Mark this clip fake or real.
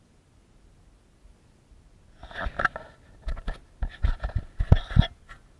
real